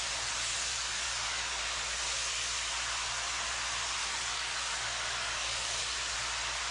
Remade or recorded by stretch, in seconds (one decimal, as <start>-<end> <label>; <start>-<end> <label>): 0.0-0.7 recorded; 0.7-1.6 remade; 1.6-4.0 recorded; 4.0-5.8 remade; 5.8-6.7 recorded

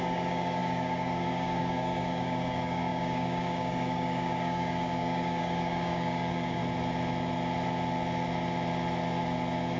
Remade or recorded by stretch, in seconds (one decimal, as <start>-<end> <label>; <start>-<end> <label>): 0.0-6.6 remade; 6.6-9.8 recorded

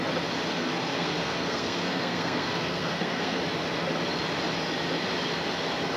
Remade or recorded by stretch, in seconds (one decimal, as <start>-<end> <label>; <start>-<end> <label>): 0.0-0.5 recorded; 0.5-3.4 remade; 3.4-6.0 recorded

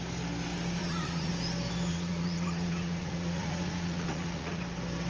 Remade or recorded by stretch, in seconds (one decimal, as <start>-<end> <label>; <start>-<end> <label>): 0.0-0.8 recorded; 0.8-1.3 remade; 1.3-1.9 recorded; 1.9-4.6 remade; 4.6-5.1 recorded

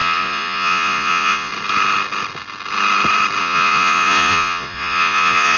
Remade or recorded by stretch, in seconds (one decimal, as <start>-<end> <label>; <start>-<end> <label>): 0.0-1.5 remade; 1.5-3.4 recorded; 3.4-5.6 remade

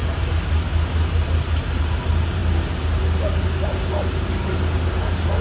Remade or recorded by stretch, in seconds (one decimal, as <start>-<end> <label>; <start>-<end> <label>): 0.0-1.9 remade; 1.9-5.4 recorded

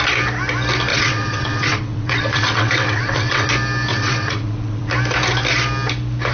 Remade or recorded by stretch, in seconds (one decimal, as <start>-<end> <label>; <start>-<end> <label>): 0.0-0.9 recorded; 0.9-3.5 remade; 3.5-3.9 recorded; 3.9-4.9 remade; 4.9-6.3 recorded

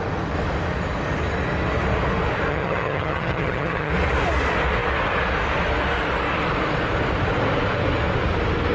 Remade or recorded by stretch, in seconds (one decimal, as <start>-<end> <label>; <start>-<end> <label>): 0.0-2.5 recorded; 2.5-3.9 remade; 3.9-8.7 recorded